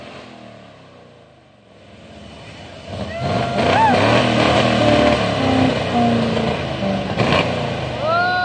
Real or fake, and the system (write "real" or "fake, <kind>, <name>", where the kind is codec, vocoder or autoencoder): real